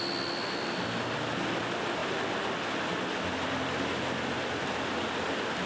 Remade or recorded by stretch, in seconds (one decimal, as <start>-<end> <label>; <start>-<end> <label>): 0.0-5.7 recorded